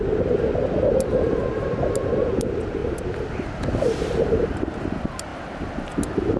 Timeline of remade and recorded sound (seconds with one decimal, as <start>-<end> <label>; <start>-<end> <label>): 0.0-6.4 recorded